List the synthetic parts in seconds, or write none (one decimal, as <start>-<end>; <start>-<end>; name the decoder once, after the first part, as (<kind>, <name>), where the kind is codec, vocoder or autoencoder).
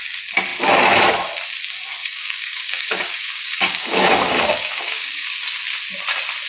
2.0-5.3 (codec, DAC)